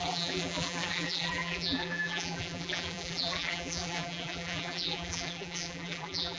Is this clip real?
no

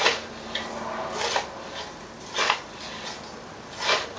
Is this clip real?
yes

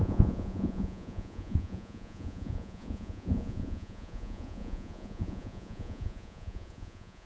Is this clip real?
no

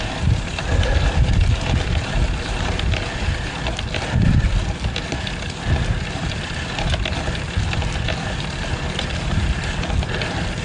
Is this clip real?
yes